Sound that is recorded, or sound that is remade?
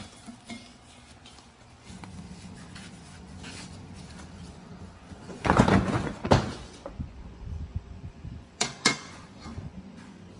remade